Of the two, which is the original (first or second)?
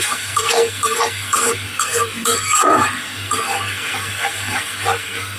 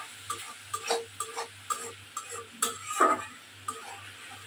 second